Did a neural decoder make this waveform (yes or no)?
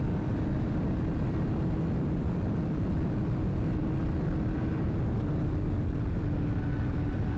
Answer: yes